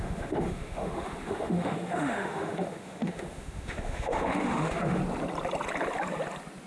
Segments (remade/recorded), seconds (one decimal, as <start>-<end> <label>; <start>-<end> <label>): 0.0-5.0 remade; 5.0-6.7 recorded